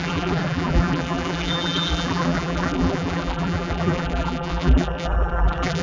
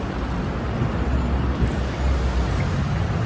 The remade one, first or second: first